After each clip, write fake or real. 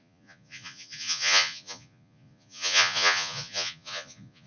fake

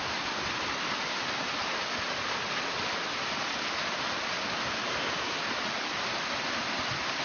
real